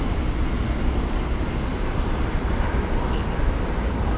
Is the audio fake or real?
real